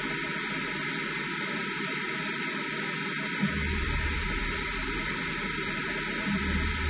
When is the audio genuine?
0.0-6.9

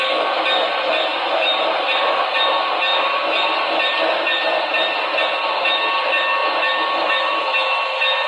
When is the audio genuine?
0.0-1.1; 2.2-2.9; 5.1-6.4; 7.4-8.3